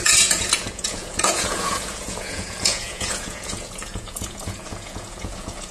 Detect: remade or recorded remade